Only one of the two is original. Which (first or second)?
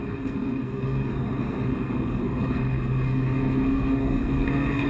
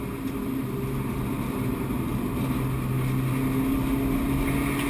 second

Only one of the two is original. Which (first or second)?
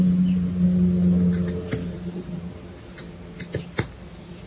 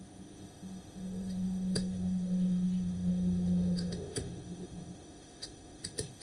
first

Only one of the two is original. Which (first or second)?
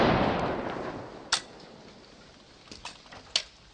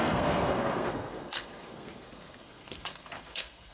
first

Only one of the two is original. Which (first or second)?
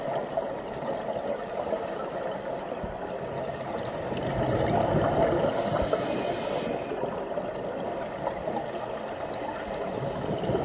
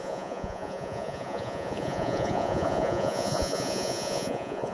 first